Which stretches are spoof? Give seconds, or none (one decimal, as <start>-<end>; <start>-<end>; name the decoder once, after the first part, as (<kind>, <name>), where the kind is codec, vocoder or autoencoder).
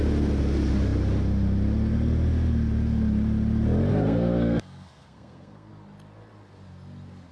3.9-5.7 (codec, SNAC)